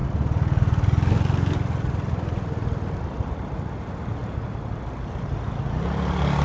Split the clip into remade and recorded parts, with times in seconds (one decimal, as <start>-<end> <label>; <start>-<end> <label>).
0.0-6.4 recorded